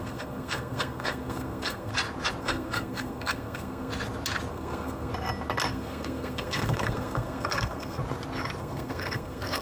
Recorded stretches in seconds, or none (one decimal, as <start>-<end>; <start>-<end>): 1.9-2.4; 3.9-4.5; 5.1-5.7; 8.0-8.6